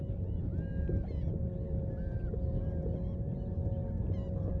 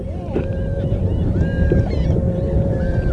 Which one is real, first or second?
first